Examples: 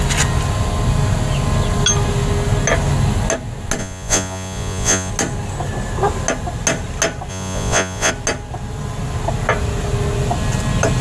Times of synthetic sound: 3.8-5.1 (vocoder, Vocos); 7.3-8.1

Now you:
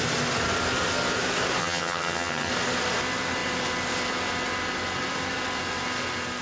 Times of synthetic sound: 1.6-2.5 (vocoder, HiFi-GAN)